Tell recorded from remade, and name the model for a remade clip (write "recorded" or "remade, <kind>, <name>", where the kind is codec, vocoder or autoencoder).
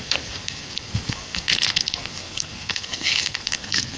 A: remade, codec, SNAC